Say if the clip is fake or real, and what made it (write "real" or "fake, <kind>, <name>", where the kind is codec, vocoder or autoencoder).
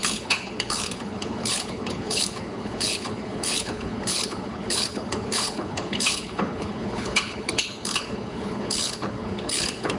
fake, codec, HILCodec